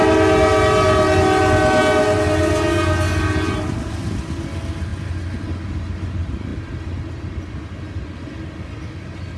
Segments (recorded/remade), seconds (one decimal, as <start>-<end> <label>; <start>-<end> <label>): 0.0-9.4 recorded